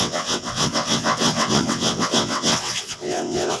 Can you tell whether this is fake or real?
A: fake